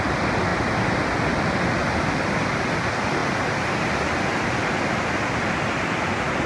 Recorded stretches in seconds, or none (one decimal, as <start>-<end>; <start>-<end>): 0.0-6.5